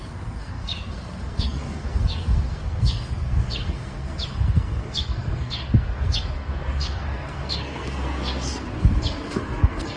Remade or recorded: remade